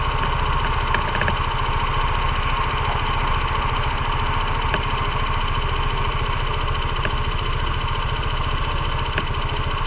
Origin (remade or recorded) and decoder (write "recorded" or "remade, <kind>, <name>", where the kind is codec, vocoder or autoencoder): recorded